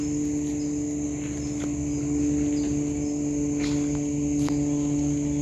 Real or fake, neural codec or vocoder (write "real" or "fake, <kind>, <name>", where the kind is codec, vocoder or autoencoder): real